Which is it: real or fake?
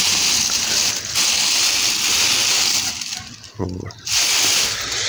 real